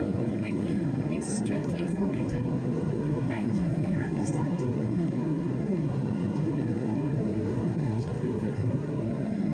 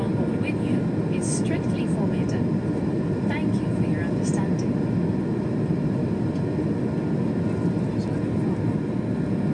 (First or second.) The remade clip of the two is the first